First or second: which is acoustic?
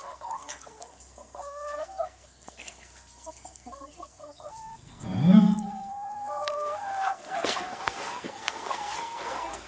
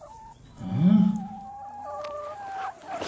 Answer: second